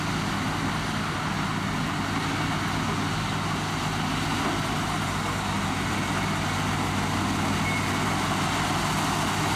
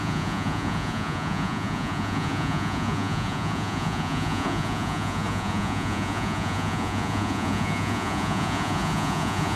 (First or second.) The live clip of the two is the first